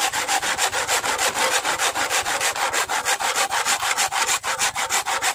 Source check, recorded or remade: recorded